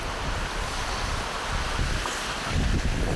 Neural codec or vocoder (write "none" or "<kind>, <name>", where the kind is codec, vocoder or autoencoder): none